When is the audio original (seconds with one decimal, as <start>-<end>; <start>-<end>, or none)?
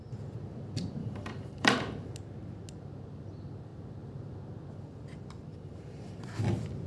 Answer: 0.0-1.0; 2.1-5.5; 6.2-6.9